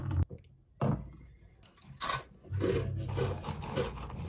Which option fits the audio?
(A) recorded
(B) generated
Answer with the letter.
A